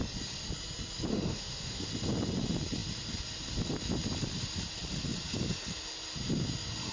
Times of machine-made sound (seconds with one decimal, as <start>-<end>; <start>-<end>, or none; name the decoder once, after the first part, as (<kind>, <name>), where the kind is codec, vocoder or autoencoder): 1.1-1.9 (autoencoder, DAC-VAE)